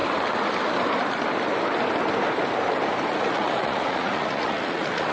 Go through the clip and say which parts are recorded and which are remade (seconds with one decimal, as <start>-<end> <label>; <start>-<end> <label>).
0.0-3.1 recorded; 3.1-5.1 remade